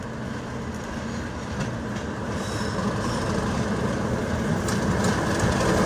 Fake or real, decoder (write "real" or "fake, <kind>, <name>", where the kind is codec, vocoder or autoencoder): real